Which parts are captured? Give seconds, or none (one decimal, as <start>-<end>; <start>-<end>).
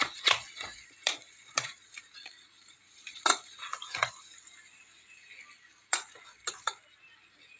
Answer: 3.7-7.6